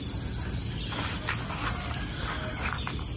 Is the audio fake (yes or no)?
no